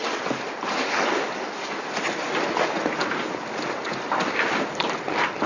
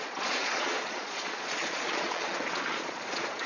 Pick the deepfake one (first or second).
second